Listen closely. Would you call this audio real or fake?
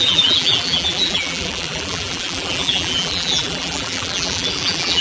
fake